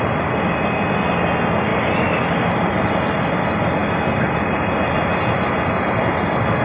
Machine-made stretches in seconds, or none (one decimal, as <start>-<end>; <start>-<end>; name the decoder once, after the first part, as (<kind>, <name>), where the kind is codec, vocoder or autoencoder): none